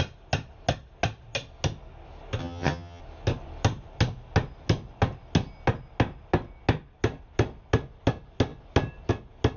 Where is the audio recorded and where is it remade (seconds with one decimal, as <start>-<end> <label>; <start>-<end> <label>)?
0.0-2.4 recorded; 2.4-3.0 remade; 3.0-9.6 recorded